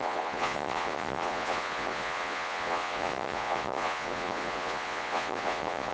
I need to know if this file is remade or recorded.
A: remade